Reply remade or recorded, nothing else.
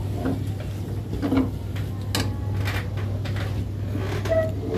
recorded